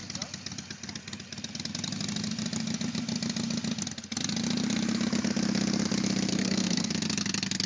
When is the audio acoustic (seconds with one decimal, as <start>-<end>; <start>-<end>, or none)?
0.0-6.3; 6.9-7.7